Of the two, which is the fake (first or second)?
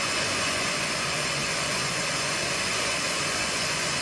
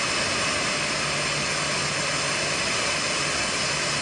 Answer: first